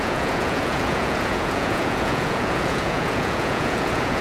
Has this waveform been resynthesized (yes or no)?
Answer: yes